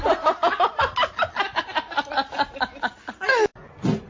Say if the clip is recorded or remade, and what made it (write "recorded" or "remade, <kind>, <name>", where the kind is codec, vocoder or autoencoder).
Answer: recorded